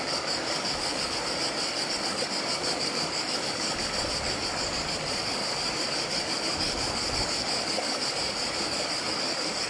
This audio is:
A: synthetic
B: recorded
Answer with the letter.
A